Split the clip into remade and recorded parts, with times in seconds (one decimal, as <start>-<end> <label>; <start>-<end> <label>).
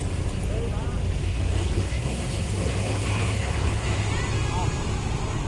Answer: 0.0-1.2 recorded; 1.2-4.1 remade; 4.1-5.5 recorded